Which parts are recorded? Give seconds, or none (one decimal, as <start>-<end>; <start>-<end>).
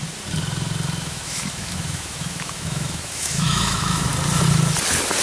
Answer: 0.0-1.0; 4.1-5.2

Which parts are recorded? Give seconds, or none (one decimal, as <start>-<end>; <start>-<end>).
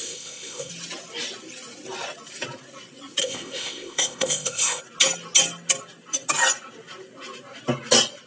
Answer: 0.7-3.2; 4.8-8.3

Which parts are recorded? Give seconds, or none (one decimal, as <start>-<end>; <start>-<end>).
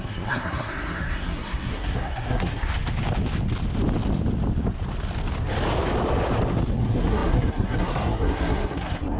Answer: 2.7-6.7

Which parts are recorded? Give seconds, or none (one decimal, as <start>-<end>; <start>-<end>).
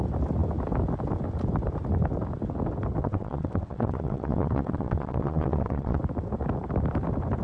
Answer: 0.0-3.0; 6.0-7.4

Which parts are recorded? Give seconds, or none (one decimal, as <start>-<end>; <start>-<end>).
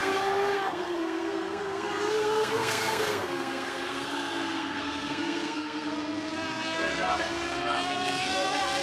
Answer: none